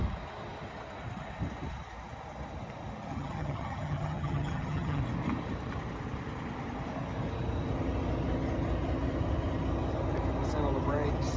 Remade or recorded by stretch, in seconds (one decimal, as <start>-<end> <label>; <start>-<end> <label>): 0.0-3.1 recorded; 3.1-5.0 remade; 5.0-11.4 recorded